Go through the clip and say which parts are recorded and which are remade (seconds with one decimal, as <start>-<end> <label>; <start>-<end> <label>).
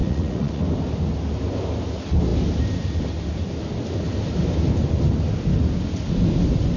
0.0-0.6 remade; 0.6-6.8 recorded